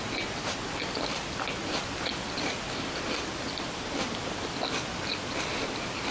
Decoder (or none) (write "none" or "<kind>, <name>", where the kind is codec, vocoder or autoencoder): none